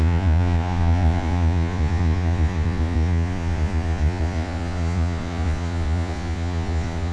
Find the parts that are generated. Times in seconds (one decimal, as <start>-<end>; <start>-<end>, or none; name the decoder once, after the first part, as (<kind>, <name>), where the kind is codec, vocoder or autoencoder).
0.0-7.1 (vocoder, Vocos)